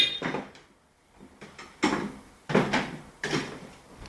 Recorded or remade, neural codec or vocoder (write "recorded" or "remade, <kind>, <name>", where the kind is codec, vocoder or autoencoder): recorded